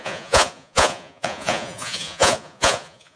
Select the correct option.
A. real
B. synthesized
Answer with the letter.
B